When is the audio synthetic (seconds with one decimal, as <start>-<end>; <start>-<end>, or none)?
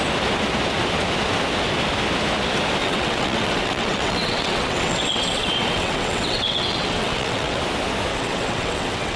2.8-7.6; 8.1-9.2